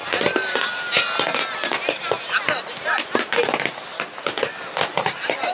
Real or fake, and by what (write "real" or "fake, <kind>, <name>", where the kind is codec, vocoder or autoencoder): real